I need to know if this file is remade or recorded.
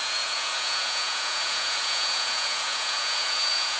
remade